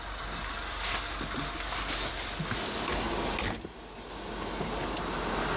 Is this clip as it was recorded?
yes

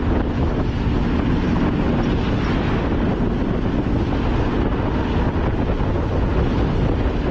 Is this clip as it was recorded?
yes